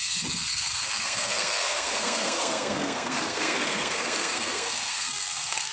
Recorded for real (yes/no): no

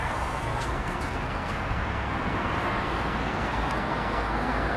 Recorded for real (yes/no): no